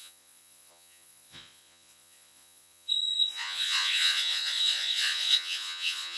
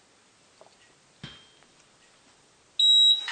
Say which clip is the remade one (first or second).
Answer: first